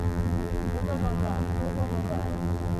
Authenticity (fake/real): fake